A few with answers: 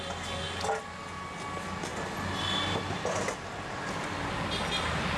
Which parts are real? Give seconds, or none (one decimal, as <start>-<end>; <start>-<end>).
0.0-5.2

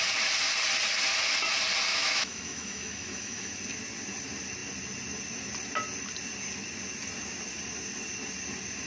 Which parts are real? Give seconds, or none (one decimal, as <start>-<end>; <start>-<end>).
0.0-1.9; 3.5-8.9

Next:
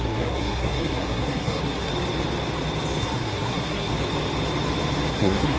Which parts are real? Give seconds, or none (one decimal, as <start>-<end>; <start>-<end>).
1.9-3.0; 3.9-5.1